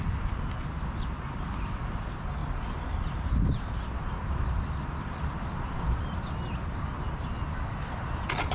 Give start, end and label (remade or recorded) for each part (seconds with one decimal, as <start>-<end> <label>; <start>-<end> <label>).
0.0-8.5 recorded

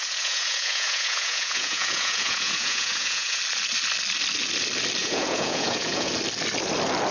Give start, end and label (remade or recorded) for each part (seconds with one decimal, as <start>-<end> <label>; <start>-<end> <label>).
0.0-3.4 remade; 3.4-5.0 recorded; 5.0-6.1 remade; 6.1-7.1 recorded

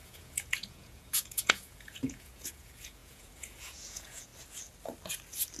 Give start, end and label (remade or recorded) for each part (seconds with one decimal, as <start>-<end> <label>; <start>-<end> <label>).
0.0-4.3 remade; 4.3-5.6 recorded